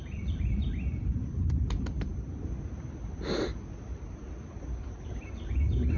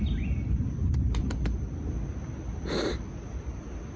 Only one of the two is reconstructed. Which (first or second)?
first